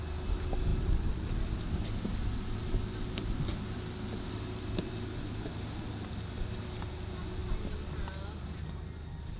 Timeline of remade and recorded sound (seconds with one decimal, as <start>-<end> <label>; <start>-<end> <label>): 0.0-9.4 recorded